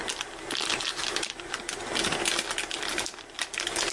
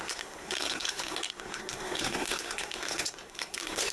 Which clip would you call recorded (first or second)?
first